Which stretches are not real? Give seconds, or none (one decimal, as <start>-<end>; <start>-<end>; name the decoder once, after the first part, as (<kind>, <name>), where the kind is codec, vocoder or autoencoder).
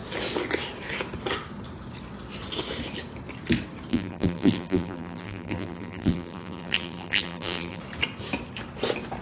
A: 3.9-7.8 (vocoder, BigVGAN v2)